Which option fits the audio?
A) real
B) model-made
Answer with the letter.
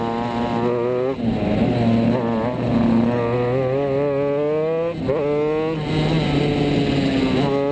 A